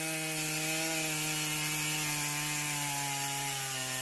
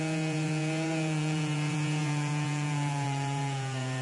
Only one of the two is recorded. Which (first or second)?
first